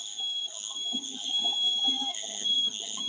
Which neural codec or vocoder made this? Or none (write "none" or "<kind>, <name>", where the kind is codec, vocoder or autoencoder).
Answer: codec, SNAC